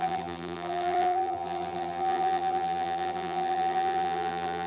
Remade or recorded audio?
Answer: remade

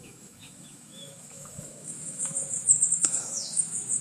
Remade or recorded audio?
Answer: remade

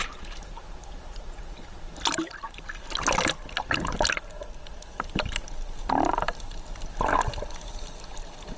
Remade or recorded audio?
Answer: recorded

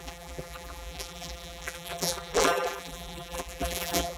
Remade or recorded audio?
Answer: remade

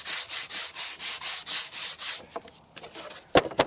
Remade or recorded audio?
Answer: recorded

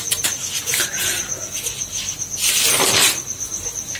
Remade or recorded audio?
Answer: recorded